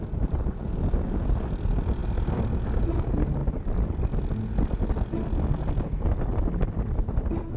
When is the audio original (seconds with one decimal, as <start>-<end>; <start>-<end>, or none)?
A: 3.4-5.2